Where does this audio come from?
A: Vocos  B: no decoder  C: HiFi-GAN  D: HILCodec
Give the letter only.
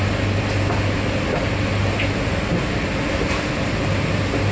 B